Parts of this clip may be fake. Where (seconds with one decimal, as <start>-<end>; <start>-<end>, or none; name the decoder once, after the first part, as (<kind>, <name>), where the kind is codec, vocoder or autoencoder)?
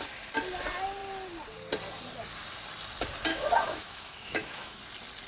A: 3.3-4.8 (autoencoder, DAC-VAE)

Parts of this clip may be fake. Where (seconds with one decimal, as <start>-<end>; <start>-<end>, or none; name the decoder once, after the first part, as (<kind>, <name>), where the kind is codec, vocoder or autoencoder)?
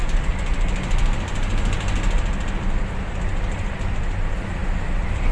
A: none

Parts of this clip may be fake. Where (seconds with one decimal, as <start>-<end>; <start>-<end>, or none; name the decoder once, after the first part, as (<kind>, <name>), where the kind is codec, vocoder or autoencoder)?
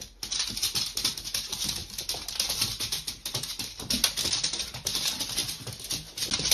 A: 1.8-4.4 (vocoder, BigVGAN v2)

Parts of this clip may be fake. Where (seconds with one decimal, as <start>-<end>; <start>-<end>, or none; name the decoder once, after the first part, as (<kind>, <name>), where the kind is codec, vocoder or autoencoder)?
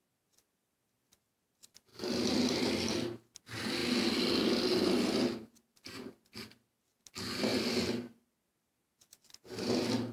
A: 1.9-2.6 (vocoder, BigVGAN v2); 3.8-4.5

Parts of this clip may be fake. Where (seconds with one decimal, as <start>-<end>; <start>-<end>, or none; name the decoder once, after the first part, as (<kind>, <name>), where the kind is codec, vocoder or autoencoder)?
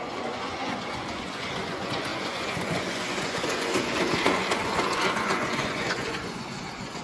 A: 0.0-7.0 (vocoder, Vocos)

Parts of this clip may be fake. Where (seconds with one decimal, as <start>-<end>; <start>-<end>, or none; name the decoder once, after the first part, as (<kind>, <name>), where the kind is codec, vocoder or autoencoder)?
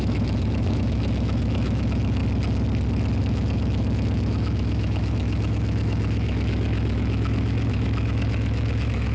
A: 0.0-2.2 (autoencoder, DAC-VAE); 3.2-9.1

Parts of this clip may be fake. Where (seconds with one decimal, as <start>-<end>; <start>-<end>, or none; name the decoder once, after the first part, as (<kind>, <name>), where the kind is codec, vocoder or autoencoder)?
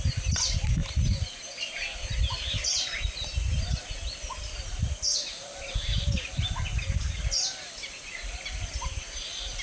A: 5.3-7.2 (vocoder, BigVGAN v2)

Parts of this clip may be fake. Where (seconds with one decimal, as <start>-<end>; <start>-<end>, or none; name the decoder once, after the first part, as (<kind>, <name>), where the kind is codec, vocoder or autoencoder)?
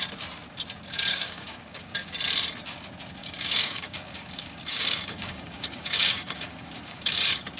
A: 1.1-2.1 (codec, DAC); 3.2-7.1